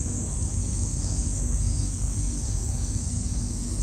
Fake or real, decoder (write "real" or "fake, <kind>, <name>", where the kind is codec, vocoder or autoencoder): fake, codec, SNAC